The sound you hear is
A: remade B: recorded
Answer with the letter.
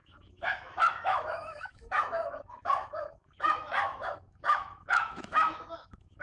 A